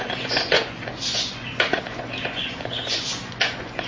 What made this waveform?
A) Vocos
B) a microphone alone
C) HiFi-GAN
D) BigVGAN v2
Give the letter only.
A